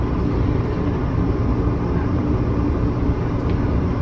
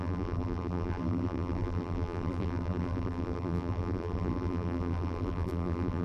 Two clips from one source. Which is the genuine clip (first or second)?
first